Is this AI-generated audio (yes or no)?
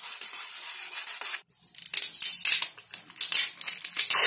no